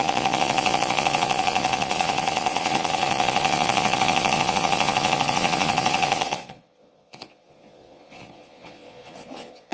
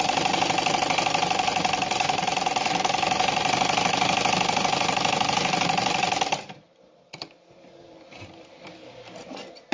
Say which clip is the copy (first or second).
first